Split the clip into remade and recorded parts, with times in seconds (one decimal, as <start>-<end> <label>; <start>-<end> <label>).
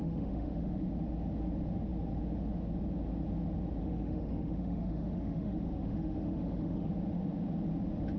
0.0-0.8 remade; 0.8-3.8 recorded; 3.8-6.9 remade; 6.9-8.2 recorded